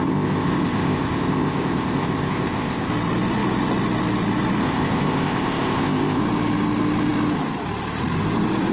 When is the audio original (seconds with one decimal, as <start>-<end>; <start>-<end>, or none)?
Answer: 2.9-4.6; 6.2-8.7